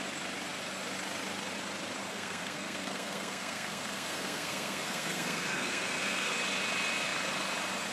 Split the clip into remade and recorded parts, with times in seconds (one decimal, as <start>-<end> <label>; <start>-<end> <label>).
0.0-2.0 recorded; 2.0-6.3 remade; 6.3-7.9 recorded